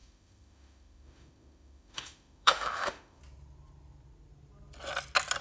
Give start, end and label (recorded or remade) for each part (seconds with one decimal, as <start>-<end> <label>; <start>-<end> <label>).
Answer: 0.0-3.2 remade; 3.2-5.4 recorded